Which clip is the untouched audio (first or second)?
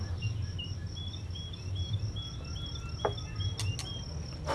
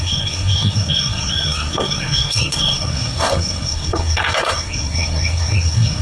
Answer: first